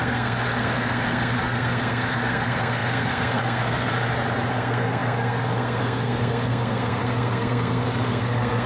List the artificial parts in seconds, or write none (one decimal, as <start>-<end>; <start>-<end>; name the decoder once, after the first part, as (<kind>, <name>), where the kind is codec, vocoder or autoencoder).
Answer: 0.0-3.9 (codec, SNAC); 4.5-8.7